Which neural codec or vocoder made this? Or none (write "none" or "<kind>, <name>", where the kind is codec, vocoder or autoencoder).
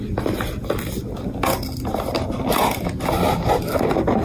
none